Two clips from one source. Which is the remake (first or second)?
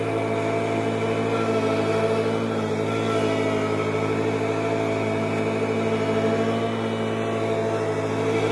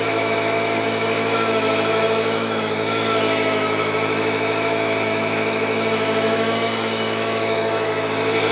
second